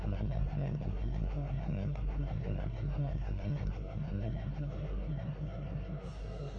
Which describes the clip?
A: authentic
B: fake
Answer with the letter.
B